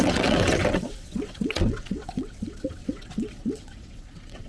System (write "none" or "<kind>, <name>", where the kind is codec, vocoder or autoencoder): vocoder, WaveNeXt